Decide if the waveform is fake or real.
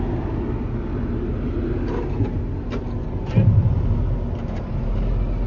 real